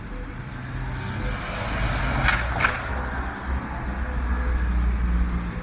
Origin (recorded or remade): recorded